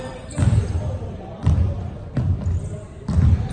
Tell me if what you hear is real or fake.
fake